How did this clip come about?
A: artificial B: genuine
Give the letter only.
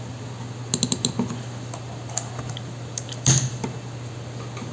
B